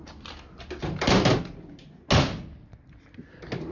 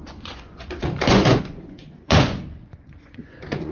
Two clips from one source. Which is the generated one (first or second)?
second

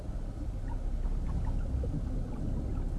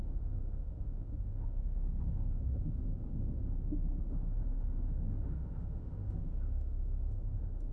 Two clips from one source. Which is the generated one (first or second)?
second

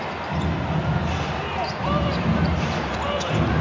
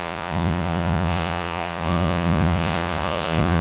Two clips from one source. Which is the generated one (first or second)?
second